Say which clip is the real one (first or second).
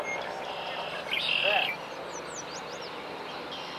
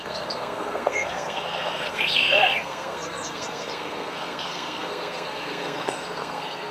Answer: first